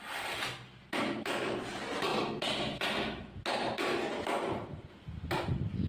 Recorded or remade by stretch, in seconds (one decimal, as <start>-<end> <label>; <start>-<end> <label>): 0.0-5.9 recorded